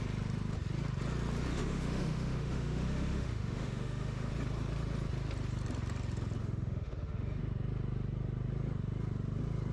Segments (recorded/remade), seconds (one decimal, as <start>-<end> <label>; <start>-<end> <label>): 0.0-1.5 recorded; 1.5-4.3 remade; 4.3-6.4 recorded; 6.4-7.4 remade; 7.4-9.7 recorded